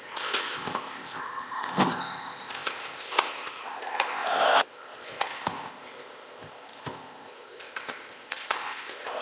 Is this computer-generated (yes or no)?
yes